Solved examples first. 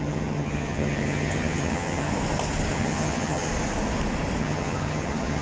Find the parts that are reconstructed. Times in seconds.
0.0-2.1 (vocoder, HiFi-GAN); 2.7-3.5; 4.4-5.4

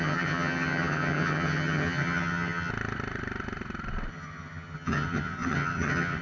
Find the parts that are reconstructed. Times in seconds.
0.0-2.7 (vocoder, HiFi-GAN); 4.1-6.2

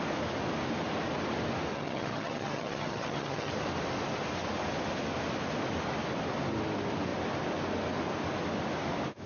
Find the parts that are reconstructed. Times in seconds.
1.7-3.5 (vocoder, HiFi-GAN)

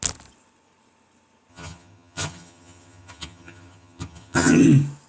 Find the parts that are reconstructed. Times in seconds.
1.5-4.6 (vocoder, HiFi-GAN)